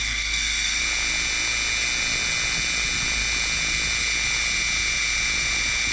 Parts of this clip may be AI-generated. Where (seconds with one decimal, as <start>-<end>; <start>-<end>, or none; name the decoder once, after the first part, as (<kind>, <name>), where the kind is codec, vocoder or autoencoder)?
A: 0.0-0.8 (codec, SNAC)